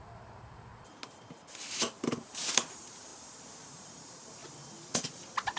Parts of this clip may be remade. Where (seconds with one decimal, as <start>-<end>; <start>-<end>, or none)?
0.0-0.7; 2.7-3.1; 3.7-4.4

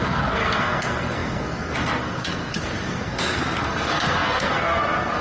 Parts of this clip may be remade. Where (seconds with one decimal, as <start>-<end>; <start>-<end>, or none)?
0.0-5.2

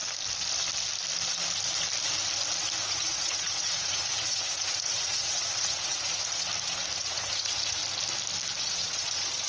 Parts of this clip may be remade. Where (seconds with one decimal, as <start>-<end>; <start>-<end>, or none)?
2.9-6.5; 7.0-7.8; 8.6-9.5

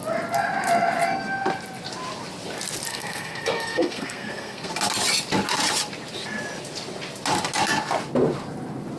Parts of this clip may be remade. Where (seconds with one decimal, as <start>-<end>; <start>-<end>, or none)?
2.9-4.7

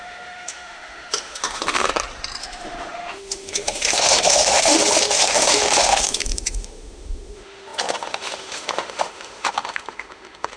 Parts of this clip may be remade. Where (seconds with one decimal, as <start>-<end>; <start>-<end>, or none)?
0.0-1.9; 2.4-10.6

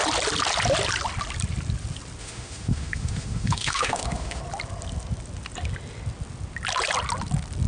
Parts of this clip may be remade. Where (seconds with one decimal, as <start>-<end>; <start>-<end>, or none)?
2.2-4.4